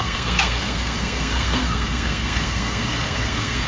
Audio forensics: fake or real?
fake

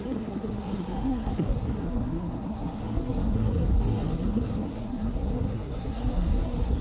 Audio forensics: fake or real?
fake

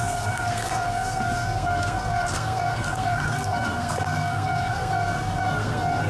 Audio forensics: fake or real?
fake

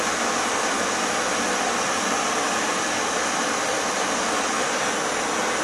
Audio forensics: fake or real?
real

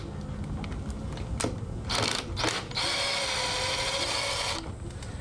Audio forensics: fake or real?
real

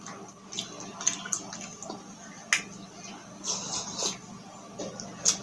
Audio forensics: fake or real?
real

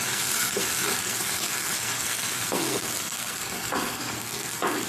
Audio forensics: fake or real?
fake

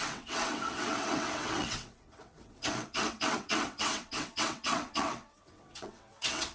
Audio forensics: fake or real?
fake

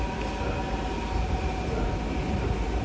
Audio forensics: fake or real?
real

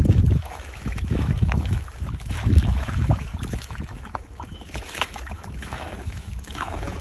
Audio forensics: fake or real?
fake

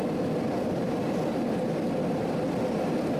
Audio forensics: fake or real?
real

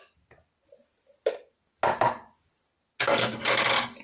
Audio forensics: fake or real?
real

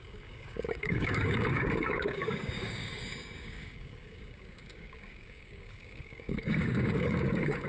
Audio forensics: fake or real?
fake